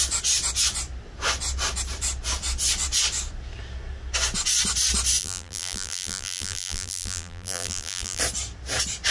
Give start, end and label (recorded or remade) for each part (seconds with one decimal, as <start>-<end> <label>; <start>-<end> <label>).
0.0-5.2 recorded; 5.2-8.2 remade; 8.2-9.1 recorded